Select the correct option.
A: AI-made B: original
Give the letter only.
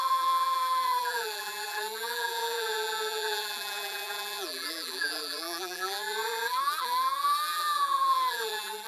A